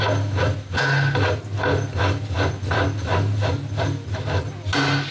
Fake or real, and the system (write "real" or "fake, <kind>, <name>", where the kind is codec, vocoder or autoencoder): real